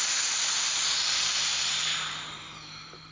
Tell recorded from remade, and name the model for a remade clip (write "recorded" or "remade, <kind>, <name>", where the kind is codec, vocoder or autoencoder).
recorded